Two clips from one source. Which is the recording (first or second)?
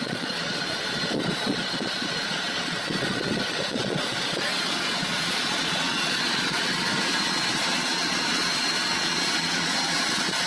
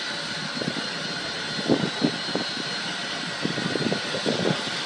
second